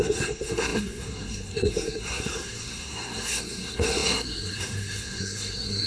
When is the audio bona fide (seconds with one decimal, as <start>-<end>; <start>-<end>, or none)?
none